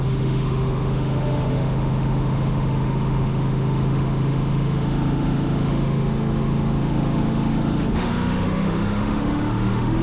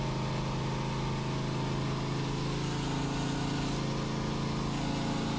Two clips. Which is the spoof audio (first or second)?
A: first